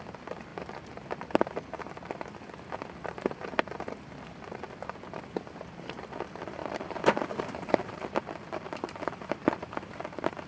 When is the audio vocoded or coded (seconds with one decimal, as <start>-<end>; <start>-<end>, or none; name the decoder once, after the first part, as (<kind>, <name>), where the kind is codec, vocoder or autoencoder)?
6.6-8.1 (vocoder, BigVGAN v2)